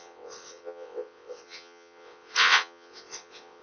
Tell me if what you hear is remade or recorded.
remade